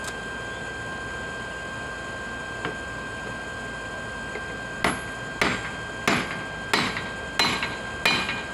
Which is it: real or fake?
real